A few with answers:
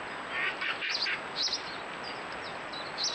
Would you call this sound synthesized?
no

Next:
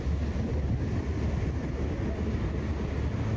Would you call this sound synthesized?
no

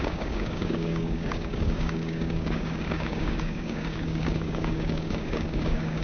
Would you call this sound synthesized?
yes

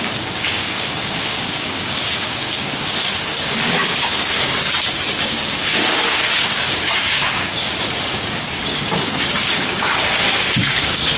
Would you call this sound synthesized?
yes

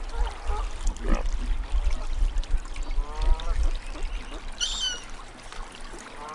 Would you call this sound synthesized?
no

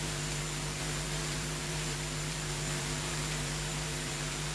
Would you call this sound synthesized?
yes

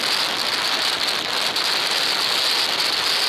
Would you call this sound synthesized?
no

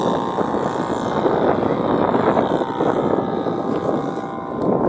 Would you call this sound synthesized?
no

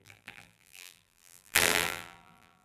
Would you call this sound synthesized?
yes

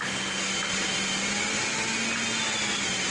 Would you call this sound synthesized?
no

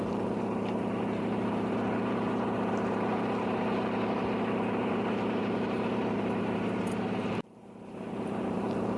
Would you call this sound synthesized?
yes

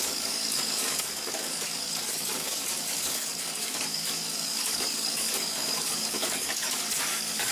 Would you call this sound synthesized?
yes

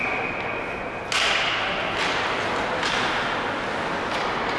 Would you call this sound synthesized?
no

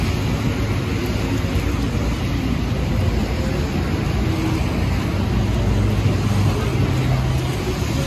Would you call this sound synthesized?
no